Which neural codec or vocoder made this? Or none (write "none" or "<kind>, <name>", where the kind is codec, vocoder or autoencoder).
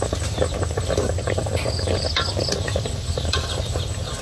vocoder, BigVGAN v2